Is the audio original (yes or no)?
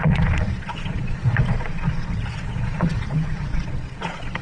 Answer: no